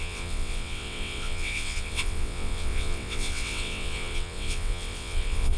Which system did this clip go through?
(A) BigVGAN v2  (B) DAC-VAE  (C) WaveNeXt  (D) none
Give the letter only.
C